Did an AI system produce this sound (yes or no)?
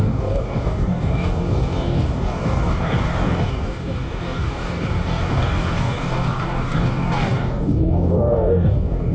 yes